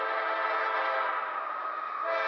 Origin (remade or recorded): recorded